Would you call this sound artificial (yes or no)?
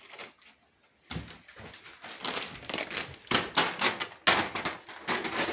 no